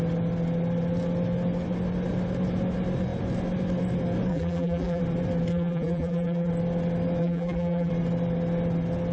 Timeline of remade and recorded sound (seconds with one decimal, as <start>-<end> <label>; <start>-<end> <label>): 0.0-4.3 recorded; 4.3-5.0 remade; 5.0-5.5 recorded; 5.5-6.5 remade; 6.5-7.2 recorded; 7.2-7.9 remade; 7.9-9.1 recorded